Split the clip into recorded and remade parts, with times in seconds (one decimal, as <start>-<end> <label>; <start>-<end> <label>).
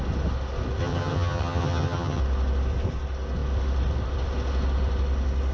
0.0-0.8 recorded; 0.8-2.2 remade; 2.2-5.5 recorded